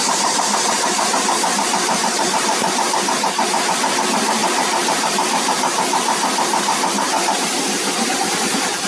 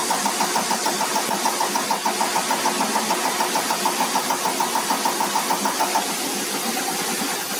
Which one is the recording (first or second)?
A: second